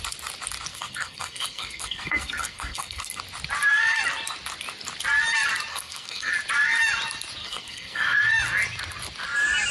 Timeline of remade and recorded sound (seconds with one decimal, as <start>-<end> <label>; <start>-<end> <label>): 0.0-0.7 recorded; 0.7-3.2 remade; 3.2-5.7 recorded; 5.7-6.3 remade; 6.3-7.4 recorded; 7.4-8.2 remade; 8.2-9.7 recorded